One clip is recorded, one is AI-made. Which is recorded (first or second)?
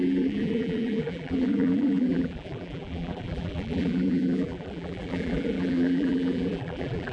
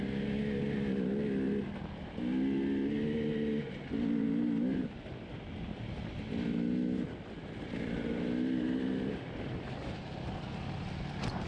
second